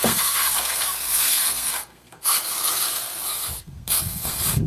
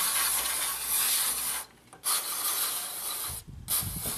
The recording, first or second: second